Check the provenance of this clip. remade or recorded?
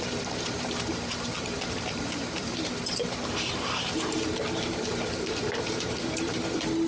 remade